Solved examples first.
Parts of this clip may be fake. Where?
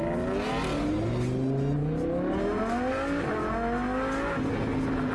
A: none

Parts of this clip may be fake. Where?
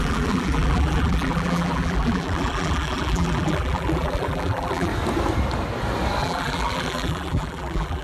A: 0.0-4.9 (vocoder, BigVGAN v2); 6.2-8.0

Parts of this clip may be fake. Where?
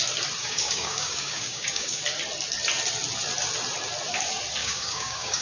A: 0.4-2.0 (codec, DAC); 4.6-5.4